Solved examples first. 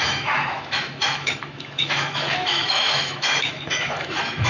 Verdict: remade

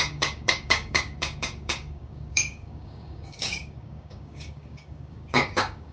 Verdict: remade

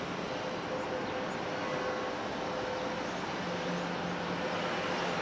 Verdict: recorded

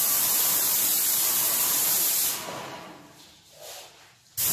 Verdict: recorded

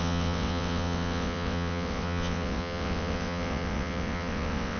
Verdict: remade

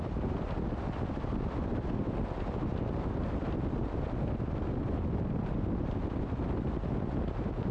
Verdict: recorded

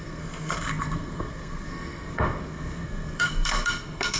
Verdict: remade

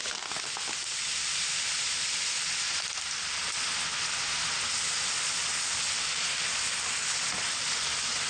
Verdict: recorded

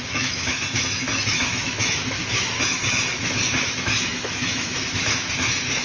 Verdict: remade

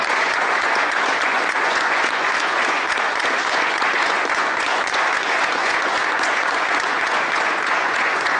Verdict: remade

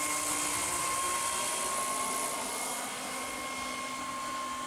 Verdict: recorded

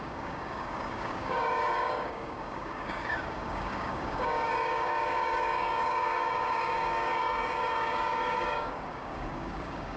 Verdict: remade